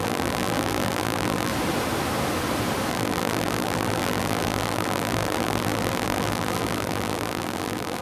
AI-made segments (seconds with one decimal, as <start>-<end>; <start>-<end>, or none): 0.0-1.5; 2.9-8.0